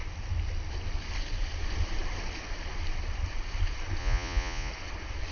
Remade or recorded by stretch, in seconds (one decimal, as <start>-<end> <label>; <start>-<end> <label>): 0.0-4.0 recorded; 4.0-4.7 remade; 4.7-5.3 recorded